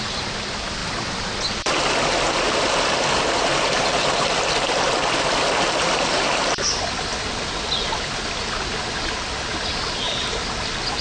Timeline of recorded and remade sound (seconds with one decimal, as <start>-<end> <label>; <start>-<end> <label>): 0.0-11.0 recorded